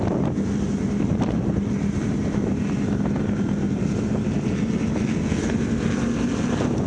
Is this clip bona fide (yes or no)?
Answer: yes